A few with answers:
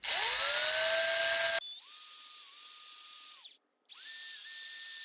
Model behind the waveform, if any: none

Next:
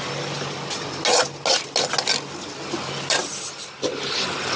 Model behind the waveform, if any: none